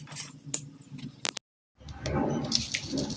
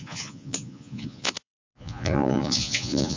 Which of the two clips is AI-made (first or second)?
second